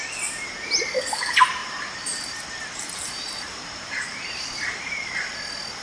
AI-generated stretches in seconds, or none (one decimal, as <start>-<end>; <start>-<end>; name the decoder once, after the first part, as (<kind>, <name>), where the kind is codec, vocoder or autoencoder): 1.6-5.1 (vocoder, BigVGAN v2)